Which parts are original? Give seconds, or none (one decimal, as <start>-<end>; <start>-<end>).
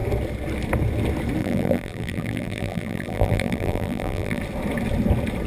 0.0-1.4; 4.4-5.5